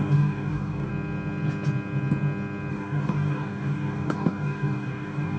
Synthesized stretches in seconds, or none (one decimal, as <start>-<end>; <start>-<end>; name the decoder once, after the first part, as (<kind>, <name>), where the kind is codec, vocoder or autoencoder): 0.0-0.9 (codec, DAC); 2.7-5.4